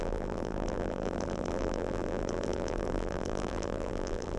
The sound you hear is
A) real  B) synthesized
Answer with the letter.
B